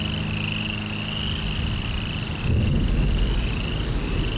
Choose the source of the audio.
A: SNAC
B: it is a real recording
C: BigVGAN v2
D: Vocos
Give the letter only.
B